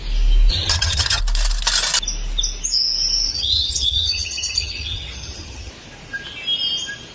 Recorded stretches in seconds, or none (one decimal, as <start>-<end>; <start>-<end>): 0.0-0.5; 1.2-3.3; 5.7-7.1

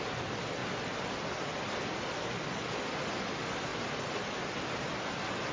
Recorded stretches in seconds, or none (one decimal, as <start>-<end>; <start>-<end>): 0.0-5.5

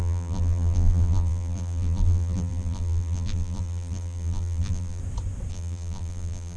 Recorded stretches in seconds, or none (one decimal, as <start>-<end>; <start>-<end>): 5.0-5.5

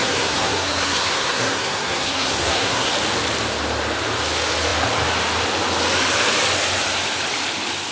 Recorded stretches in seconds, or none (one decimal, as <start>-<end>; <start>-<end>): 2.9-7.9

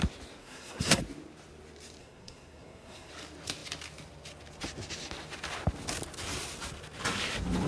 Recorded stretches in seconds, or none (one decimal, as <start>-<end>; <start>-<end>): 0.0-0.4; 1.0-2.0; 3.1-7.7